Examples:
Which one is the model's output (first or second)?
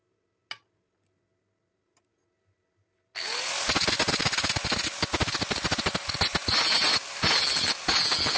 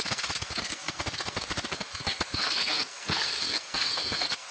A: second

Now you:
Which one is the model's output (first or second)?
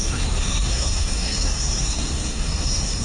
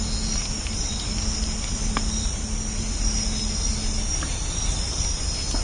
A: first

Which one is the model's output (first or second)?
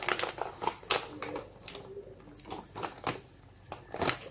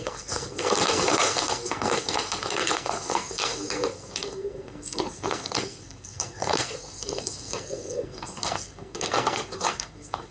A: second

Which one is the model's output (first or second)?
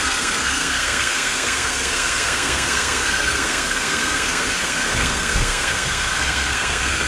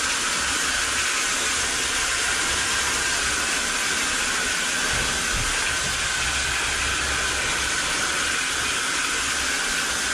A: first